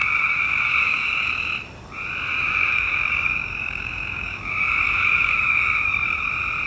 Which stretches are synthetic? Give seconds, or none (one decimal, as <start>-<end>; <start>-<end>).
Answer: 0.0-1.3; 2.3-6.3